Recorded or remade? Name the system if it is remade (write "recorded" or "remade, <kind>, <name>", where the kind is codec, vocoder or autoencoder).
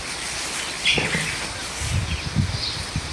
recorded